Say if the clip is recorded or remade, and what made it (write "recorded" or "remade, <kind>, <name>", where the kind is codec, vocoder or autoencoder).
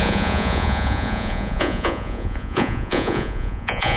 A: remade, vocoder, Vocos